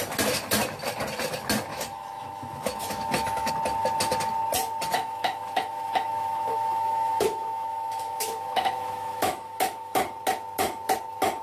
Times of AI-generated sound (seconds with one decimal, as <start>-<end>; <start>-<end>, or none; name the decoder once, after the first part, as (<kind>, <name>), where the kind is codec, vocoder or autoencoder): 1.7-3.5 (autoencoder, DAC-VAE); 4.9-10.0